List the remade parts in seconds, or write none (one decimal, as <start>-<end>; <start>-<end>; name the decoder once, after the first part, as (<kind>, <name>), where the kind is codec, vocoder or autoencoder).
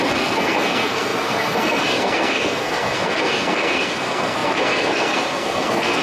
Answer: 0.0-6.0 (codec, SNAC)